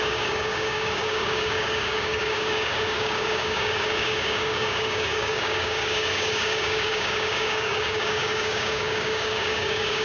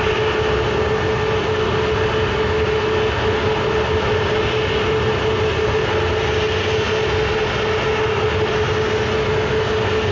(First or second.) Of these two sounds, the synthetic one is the first